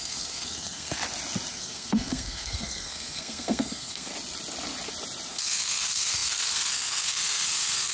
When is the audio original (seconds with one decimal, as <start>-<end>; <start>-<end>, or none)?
1.0-1.5; 4.1-5.3